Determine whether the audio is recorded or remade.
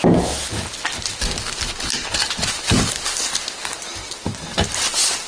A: recorded